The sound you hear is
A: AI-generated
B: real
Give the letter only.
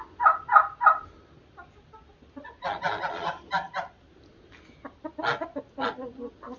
B